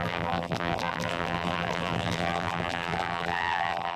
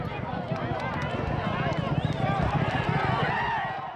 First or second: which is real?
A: second